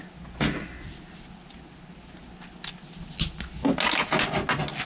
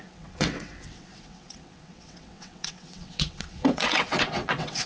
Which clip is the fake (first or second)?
second